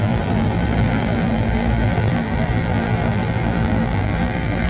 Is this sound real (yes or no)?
no